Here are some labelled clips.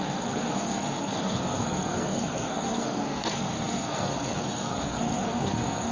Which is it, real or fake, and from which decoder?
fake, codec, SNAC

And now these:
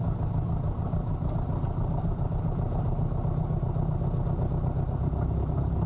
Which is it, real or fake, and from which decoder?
real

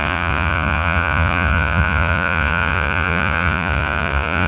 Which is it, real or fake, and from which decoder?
fake, vocoder, Vocos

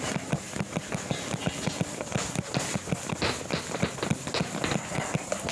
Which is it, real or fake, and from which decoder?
real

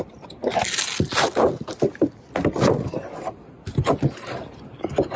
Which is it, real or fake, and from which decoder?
real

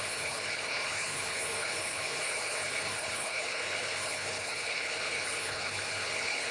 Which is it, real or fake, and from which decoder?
fake, codec, HILCodec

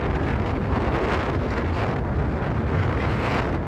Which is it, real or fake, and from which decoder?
real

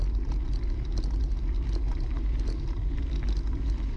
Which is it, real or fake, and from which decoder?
real